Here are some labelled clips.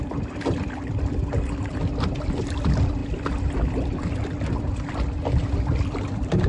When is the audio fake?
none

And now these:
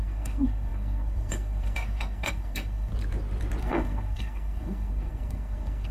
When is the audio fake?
0.0-2.9 (codec, SNAC); 3.6-5.9